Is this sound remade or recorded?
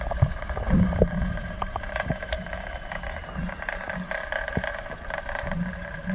remade